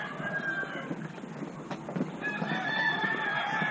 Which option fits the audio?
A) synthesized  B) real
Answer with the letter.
A